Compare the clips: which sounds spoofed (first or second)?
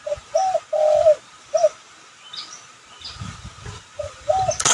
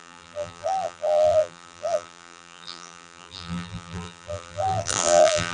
second